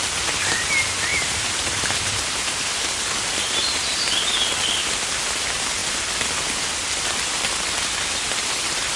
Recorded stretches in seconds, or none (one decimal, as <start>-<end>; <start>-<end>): 0.0-1.1; 2.7-3.6; 4.1-9.0